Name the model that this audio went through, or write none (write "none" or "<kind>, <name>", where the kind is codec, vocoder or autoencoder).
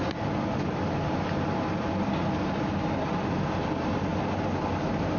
none